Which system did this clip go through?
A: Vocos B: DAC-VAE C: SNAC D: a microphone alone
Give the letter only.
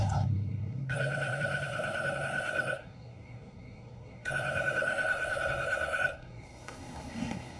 C